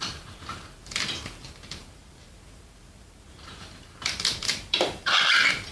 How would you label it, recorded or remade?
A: remade